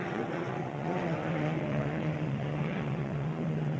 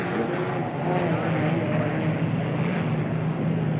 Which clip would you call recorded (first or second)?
second